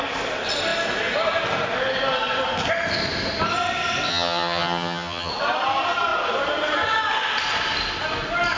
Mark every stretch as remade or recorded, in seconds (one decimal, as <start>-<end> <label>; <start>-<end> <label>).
0.0-4.1 recorded; 4.1-5.3 remade; 5.3-8.6 recorded